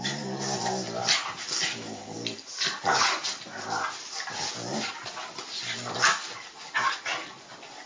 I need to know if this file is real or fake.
real